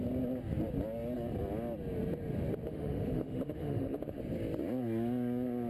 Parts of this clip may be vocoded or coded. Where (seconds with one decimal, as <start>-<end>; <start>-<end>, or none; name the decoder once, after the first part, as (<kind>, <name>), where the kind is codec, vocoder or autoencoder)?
2.7-4.2 (autoencoder, DAC-VAE)